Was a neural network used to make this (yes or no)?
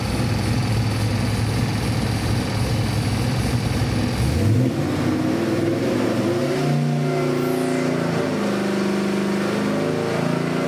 no